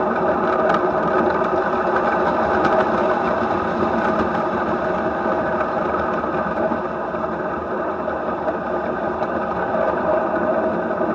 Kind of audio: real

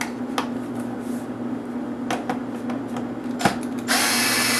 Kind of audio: real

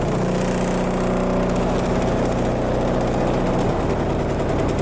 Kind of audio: real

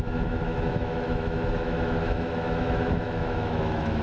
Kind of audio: fake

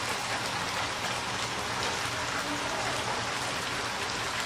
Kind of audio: real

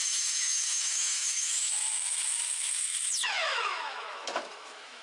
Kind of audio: fake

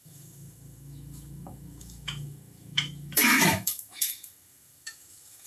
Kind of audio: fake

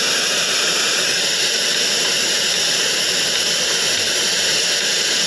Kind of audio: real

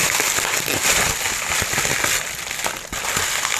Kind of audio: real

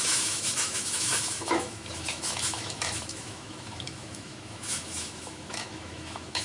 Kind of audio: fake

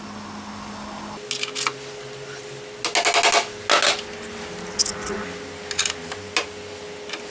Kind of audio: real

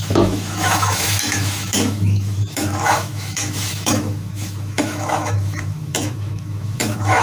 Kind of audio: fake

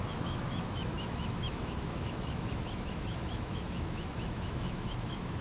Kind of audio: fake